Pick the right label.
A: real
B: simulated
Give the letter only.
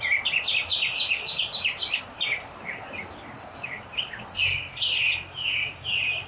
A